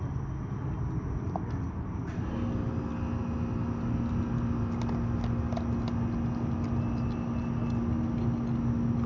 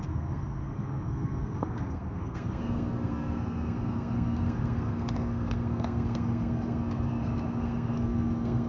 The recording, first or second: first